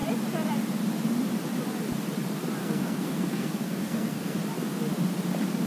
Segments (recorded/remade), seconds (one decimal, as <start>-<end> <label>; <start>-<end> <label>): 0.0-2.6 recorded; 2.6-4.4 remade; 4.4-5.7 recorded